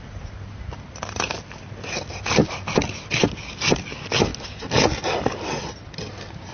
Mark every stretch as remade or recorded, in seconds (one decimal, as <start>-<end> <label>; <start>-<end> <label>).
0.0-6.5 recorded